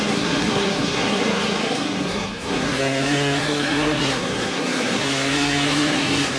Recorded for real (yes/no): no